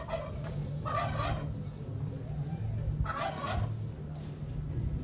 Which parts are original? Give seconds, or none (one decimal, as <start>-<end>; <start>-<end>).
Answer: 0.0-5.0